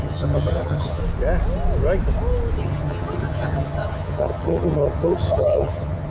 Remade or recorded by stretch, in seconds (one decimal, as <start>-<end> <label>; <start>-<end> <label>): 0.0-1.0 remade; 1.0-2.6 recorded; 2.6-6.1 remade